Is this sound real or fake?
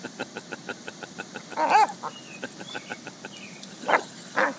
real